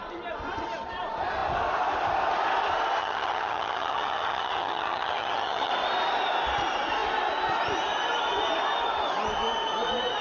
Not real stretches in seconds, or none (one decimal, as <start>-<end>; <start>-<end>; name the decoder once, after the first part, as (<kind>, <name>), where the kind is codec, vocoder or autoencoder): 3.0-5.7 (vocoder, HiFi-GAN)